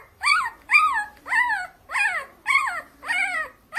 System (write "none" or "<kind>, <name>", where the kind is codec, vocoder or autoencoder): vocoder, BigVGAN v2